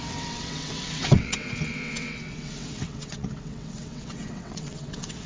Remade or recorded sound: remade